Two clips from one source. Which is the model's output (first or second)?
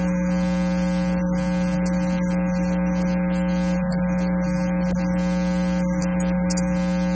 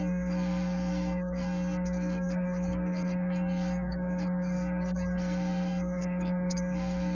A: second